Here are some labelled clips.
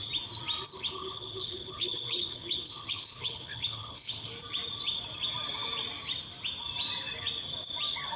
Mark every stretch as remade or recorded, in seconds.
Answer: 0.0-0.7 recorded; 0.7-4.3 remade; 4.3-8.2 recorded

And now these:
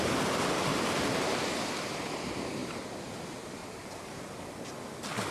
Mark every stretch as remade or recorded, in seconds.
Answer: 0.0-0.7 recorded; 0.7-1.5 remade; 1.5-2.6 recorded; 2.6-3.1 remade; 3.1-3.6 recorded; 3.6-4.2 remade; 4.2-5.3 recorded